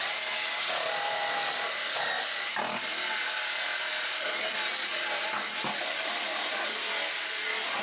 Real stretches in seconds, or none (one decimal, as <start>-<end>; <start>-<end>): 0.0-7.8